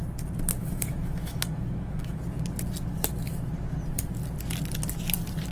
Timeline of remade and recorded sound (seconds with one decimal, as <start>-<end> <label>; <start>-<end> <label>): 0.0-0.6 recorded; 0.6-2.2 remade; 2.2-5.5 recorded